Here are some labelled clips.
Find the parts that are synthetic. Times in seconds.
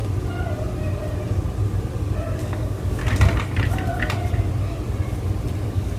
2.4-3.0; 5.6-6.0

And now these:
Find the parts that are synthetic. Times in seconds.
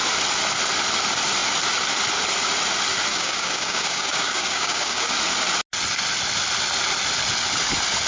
3.1-5.1